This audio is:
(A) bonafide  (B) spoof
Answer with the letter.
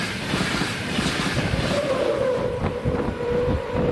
B